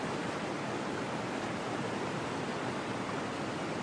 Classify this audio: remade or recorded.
recorded